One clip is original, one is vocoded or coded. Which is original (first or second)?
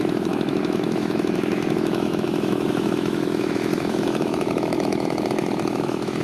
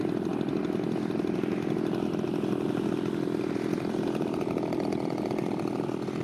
second